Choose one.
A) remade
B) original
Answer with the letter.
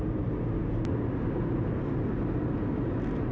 B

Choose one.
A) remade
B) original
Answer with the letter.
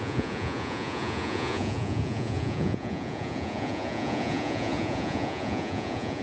A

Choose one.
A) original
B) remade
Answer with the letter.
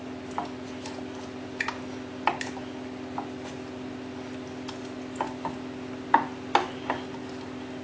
A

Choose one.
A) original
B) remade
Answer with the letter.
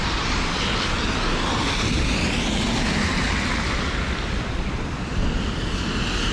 A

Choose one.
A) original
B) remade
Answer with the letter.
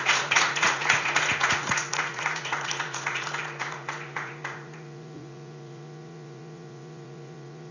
B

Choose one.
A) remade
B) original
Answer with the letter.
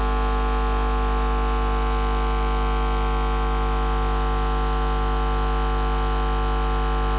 B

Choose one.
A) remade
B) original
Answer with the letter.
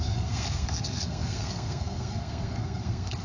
A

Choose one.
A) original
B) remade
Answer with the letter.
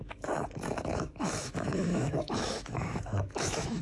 B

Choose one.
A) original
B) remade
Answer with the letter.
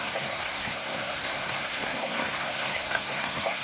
B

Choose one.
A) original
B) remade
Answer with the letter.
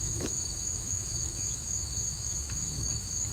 B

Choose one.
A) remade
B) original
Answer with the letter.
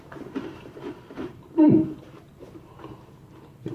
A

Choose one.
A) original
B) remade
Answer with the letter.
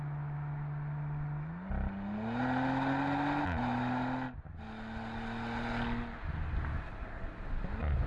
A